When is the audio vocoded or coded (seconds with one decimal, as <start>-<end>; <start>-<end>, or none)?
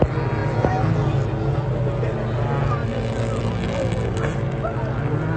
none